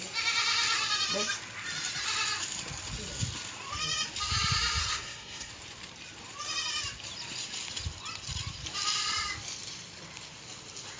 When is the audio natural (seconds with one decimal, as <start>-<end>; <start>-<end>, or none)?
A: 0.0-4.8; 5.5-11.0